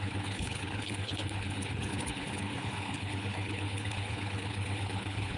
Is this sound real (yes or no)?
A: no